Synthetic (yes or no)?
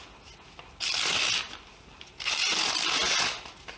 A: no